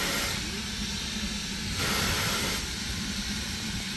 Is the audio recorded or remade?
recorded